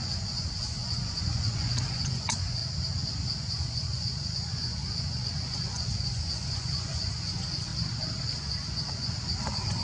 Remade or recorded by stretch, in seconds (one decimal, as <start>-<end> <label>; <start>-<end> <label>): 0.0-2.6 remade; 2.6-3.4 recorded; 3.4-7.7 remade; 7.7-8.4 recorded; 8.4-9.8 remade